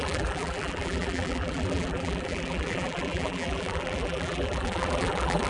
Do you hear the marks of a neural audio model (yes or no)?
yes